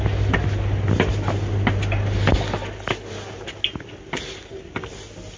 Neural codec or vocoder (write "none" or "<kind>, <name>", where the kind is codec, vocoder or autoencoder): none